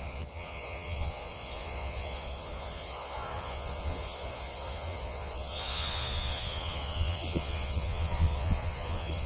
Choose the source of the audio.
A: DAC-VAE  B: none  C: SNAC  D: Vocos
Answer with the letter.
D